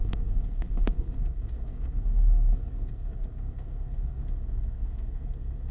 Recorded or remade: remade